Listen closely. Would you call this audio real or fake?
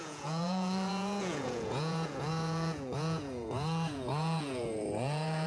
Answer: fake